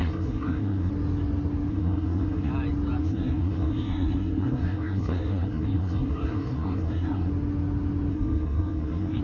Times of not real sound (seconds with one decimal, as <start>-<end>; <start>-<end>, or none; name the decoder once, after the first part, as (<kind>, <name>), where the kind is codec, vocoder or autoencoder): 0.0-0.9 (codec, SNAC); 1.7-2.5; 3.0-7.3; 8.1-9.2